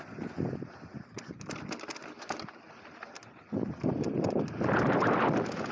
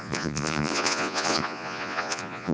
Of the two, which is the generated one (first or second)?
second